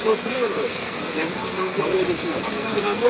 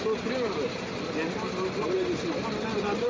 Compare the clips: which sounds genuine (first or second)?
second